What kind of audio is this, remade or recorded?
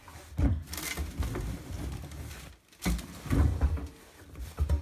recorded